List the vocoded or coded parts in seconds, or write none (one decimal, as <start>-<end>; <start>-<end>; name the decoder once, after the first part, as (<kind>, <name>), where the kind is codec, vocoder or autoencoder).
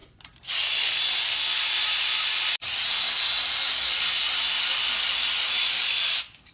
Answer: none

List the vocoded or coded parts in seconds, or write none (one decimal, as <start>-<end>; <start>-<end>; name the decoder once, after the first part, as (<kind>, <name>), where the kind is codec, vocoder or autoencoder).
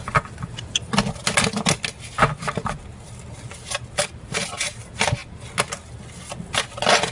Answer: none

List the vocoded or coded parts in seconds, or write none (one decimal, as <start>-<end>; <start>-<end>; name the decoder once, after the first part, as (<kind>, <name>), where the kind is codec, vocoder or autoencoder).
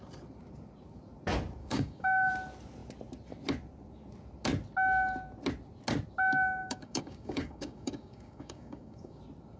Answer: 1.6-2.3 (codec, DAC); 6.6-9.2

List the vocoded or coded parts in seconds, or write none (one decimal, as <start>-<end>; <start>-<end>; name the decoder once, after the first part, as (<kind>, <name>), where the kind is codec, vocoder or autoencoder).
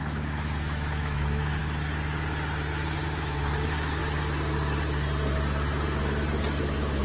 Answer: 0.0-1.6 (autoencoder, DAC-VAE); 3.0-4.0; 6.6-7.0